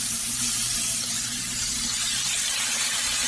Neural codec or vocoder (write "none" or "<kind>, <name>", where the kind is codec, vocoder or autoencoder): none